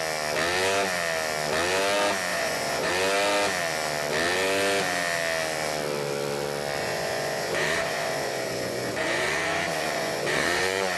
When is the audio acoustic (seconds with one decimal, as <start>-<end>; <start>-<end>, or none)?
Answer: 0.0-2.3; 2.9-6.8